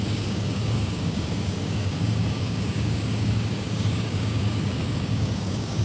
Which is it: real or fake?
fake